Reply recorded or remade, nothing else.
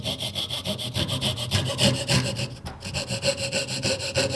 recorded